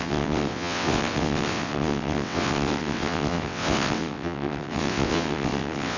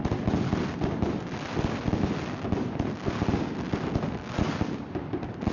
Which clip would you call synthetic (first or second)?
first